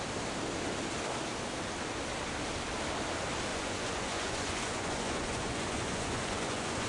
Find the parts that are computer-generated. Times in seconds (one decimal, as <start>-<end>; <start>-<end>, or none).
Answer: 3.5-6.9